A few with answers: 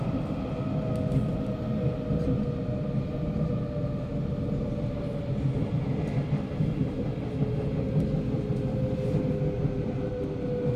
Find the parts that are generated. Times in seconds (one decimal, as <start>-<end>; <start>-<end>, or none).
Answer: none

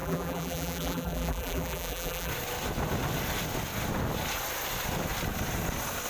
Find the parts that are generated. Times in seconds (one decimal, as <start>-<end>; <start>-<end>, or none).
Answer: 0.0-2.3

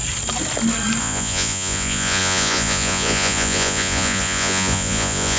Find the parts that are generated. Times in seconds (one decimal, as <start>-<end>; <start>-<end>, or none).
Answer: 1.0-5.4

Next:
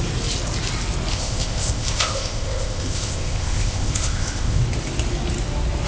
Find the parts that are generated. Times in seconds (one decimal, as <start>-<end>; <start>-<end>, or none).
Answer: 1.1-4.6